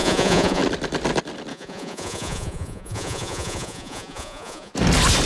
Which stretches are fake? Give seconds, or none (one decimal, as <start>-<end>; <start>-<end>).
0.0-0.6; 1.5-4.7